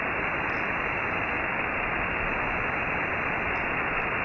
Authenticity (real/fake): real